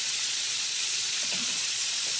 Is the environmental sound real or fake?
fake